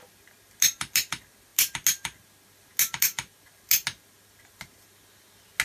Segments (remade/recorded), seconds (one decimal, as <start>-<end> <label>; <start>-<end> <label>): 0.0-5.6 recorded